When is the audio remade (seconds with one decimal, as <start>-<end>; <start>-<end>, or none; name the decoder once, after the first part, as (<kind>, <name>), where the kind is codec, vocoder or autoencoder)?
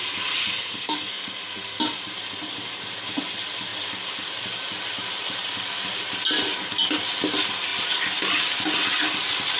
0.4-1.8 (codec, SNAC)